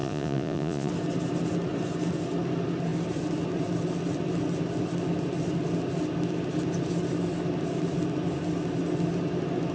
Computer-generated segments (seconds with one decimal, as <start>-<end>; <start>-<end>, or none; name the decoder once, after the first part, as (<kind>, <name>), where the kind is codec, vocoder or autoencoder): 0.0-0.9 (vocoder, Vocos)